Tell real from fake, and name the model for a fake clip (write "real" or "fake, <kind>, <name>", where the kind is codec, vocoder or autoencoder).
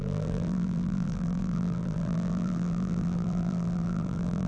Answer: fake, vocoder, BigVGAN v2